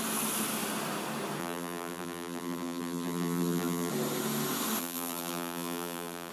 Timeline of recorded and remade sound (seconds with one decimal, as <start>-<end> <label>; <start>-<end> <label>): 0.0-1.4 recorded; 1.4-3.9 remade; 3.9-4.8 recorded; 4.8-6.3 remade